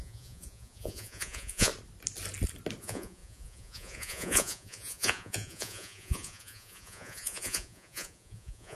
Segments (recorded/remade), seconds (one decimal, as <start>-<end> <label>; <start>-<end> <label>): 0.0-1.7 remade; 1.7-2.8 recorded; 2.8-8.8 remade